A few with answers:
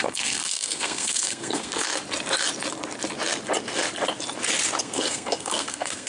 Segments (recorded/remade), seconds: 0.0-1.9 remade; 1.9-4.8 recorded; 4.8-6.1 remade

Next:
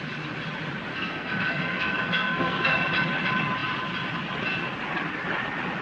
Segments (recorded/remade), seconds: 0.0-0.9 recorded; 0.9-2.9 remade; 2.9-5.8 recorded